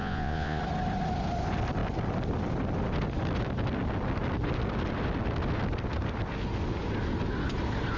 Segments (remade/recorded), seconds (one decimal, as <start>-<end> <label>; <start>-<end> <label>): 0.0-0.6 remade; 0.6-8.0 recorded